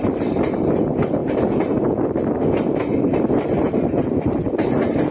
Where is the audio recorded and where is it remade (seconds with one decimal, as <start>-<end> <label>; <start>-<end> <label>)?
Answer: 0.0-2.9 recorded; 2.9-5.1 remade